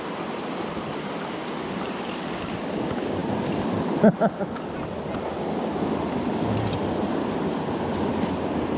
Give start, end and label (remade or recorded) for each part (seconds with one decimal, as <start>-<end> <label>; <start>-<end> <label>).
0.0-8.8 recorded